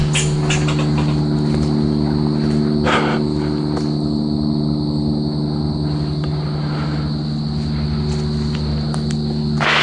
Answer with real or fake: real